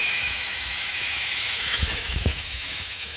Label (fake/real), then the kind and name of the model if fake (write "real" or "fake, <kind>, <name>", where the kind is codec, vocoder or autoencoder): fake, autoencoder, DAC-VAE